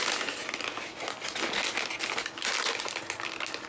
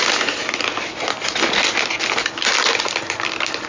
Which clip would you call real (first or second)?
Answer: first